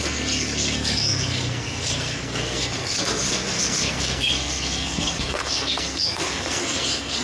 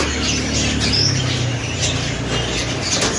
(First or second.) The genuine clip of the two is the second